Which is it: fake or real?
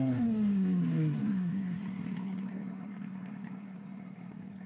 fake